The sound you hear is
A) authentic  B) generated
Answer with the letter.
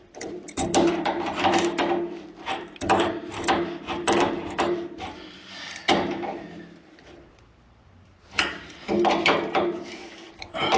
B